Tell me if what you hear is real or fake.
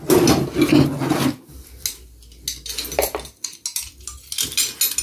real